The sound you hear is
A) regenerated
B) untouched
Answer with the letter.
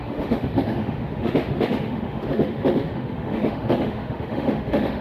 A